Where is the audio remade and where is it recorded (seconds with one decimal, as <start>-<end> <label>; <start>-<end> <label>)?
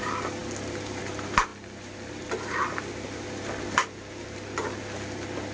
0.0-5.5 recorded